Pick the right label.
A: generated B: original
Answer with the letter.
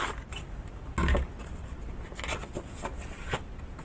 B